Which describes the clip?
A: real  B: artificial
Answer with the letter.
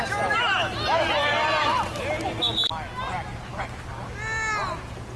A